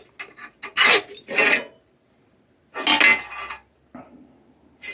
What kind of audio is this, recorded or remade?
recorded